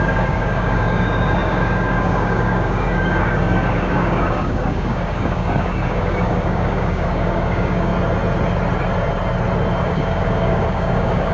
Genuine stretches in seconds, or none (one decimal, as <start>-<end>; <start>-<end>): 7.9-9.8